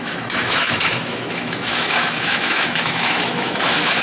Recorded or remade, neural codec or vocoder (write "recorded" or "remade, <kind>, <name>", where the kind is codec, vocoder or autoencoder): remade, autoencoder, DAC-VAE